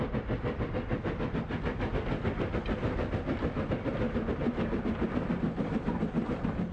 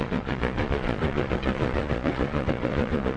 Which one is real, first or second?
first